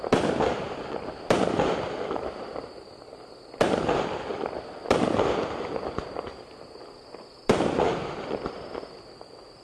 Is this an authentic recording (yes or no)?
yes